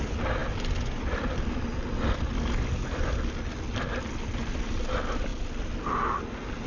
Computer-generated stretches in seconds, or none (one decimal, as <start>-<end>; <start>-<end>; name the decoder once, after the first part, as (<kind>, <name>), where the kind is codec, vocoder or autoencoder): none